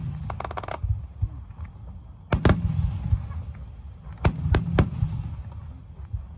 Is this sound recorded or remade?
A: recorded